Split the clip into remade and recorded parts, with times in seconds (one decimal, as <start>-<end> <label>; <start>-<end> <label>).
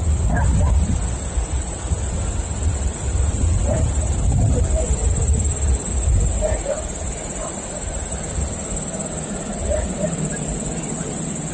0.0-11.5 recorded